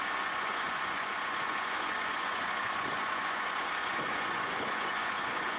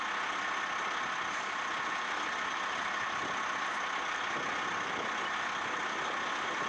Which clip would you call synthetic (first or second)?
first